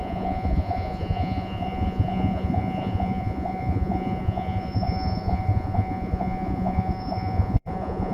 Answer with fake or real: fake